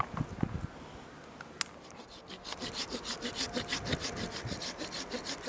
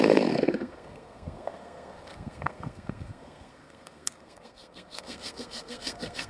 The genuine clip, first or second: first